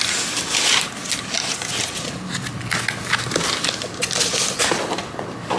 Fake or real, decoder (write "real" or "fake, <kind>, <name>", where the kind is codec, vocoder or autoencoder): real